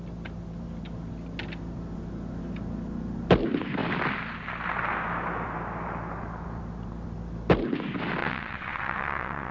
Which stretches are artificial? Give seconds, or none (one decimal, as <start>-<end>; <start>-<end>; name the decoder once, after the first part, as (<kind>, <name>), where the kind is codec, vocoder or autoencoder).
8.2-9.5 (vocoder, WaveNeXt)